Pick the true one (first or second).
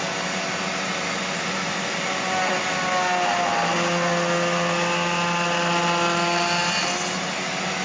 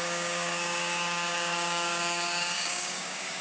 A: first